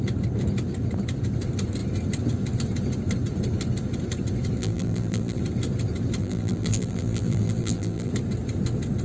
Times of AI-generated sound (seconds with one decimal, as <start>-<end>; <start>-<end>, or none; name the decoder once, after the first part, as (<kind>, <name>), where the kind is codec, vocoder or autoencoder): 4.6-5.4 (vocoder, BigVGAN v2); 6.2-8.1